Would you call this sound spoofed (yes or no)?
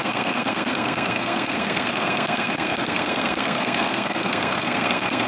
yes